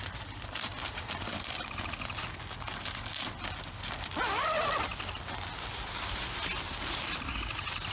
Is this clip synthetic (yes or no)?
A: no